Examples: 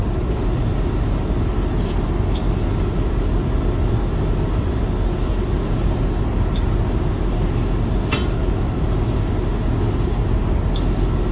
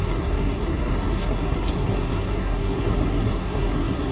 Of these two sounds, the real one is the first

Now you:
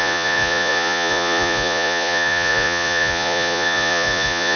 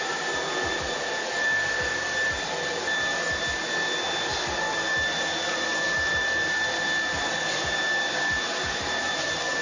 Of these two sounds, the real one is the second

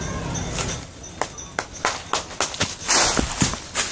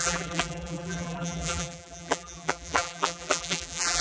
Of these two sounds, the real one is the first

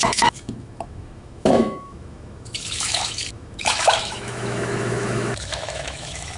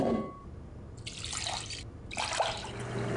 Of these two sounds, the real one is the second